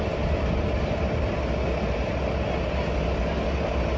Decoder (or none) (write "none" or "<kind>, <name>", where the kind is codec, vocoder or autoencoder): none